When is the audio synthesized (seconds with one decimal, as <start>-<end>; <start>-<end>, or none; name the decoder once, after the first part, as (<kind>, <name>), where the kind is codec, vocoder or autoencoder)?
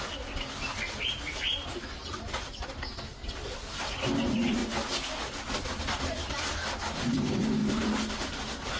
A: 0.0-4.6 (vocoder, BigVGAN v2); 5.8-8.8